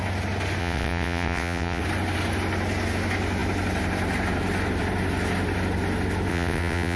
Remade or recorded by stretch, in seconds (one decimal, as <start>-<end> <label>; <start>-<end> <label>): 0.0-0.6 recorded; 0.6-1.8 remade; 1.8-6.3 recorded; 6.3-7.0 remade